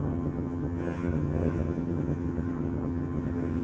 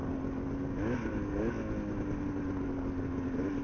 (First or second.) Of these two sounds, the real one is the second